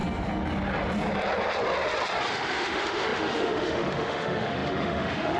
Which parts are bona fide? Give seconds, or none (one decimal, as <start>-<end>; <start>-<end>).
0.0-2.3